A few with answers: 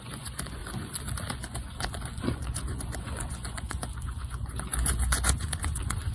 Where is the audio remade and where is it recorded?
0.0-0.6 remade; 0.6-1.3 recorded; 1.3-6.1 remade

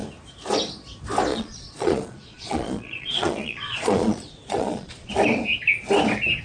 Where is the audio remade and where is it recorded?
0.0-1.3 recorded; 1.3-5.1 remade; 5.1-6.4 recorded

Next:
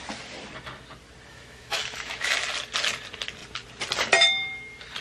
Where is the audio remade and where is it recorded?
0.0-1.3 recorded; 1.3-2.3 remade; 2.3-5.0 recorded